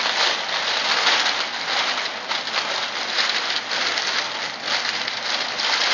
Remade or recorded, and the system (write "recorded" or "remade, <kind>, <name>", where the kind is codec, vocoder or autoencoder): recorded